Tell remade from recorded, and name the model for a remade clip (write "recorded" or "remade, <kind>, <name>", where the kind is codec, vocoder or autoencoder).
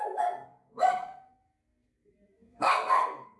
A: remade, codec, SNAC